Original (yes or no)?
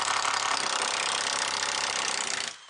yes